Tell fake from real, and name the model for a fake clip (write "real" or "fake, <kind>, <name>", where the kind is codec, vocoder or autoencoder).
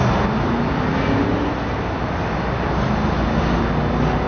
real